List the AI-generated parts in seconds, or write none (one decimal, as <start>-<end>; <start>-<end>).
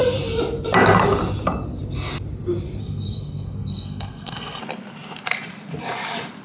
2.8-4.6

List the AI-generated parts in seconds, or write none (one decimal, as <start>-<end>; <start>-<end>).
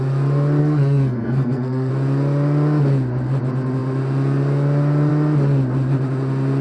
0.6-1.9